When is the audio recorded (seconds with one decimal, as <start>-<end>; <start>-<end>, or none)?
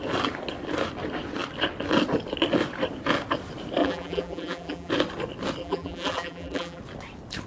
0.0-3.8; 4.9-5.6; 6.8-7.5